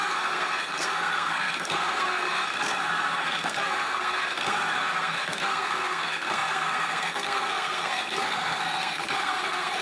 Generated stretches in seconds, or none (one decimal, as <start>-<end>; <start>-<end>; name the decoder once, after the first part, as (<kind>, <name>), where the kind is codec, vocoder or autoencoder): 0.0-9.8 (codec, SNAC)